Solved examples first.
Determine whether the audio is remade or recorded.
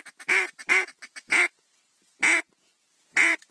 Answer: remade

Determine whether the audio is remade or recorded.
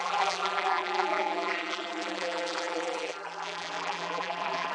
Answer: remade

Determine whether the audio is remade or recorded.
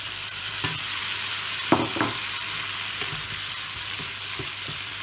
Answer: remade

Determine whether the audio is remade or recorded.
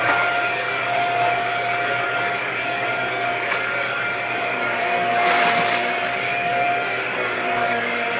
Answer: remade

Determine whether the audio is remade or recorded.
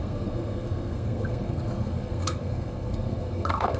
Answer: remade